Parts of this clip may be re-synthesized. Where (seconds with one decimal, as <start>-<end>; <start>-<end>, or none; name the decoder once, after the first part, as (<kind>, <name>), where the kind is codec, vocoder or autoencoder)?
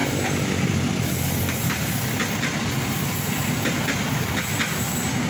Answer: none